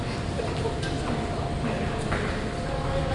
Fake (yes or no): no